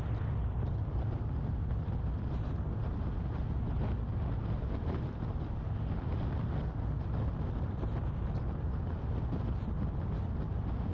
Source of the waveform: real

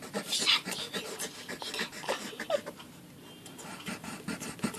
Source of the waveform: real